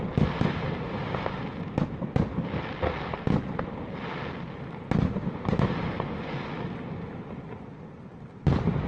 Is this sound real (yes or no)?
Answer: yes